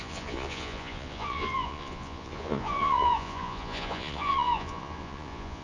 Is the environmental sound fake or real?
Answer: fake